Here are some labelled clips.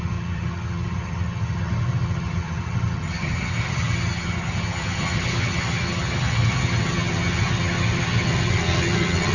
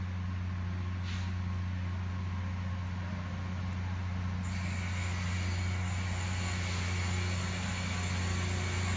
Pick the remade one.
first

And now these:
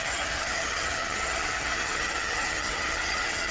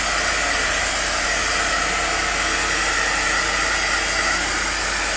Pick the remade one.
first